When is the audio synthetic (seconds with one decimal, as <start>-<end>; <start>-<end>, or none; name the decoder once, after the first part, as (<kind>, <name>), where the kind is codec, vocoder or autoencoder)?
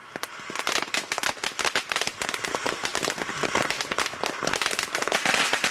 none